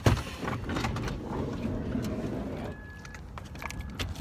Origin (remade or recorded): recorded